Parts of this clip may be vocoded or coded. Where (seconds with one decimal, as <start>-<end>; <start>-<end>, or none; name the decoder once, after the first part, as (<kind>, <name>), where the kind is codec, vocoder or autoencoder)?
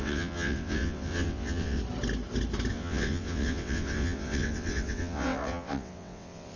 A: 0.0-1.8 (vocoder, WaveNeXt); 2.7-6.6